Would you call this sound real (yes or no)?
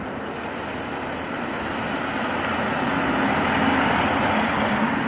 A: yes